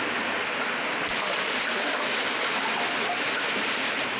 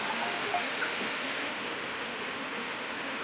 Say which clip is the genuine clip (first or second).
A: first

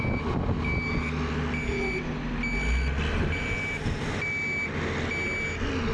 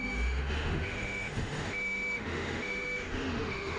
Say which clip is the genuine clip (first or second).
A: first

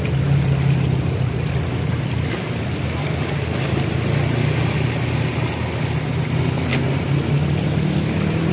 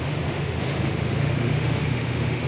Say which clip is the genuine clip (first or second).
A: first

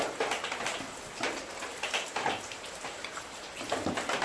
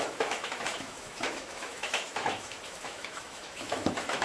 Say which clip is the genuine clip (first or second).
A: first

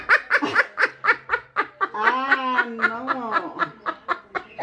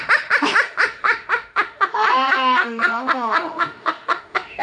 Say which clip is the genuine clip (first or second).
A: first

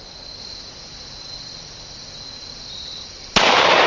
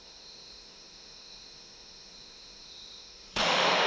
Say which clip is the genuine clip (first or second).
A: first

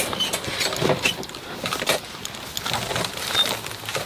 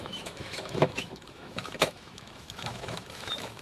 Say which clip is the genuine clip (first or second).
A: first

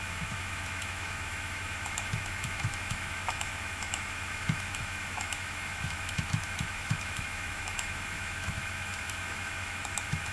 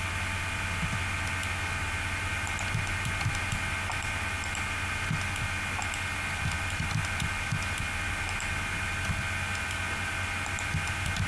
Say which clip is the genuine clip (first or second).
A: second